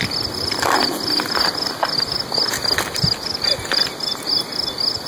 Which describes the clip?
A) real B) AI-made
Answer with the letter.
A